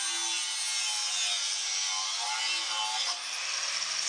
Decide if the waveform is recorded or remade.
recorded